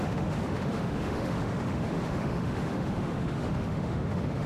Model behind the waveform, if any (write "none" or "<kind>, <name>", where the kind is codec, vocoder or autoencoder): autoencoder, DAC-VAE